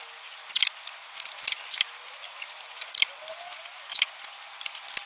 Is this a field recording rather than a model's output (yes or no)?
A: yes